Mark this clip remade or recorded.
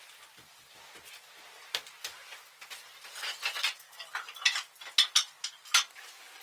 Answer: recorded